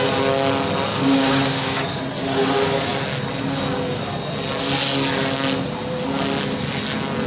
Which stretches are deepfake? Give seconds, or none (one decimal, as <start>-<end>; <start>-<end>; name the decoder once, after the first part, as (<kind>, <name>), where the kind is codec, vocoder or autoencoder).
0.9-2.0 (codec, DAC)